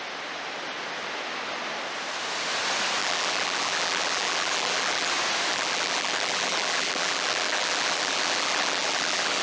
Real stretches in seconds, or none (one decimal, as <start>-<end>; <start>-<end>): 0.0-3.0; 5.1-5.5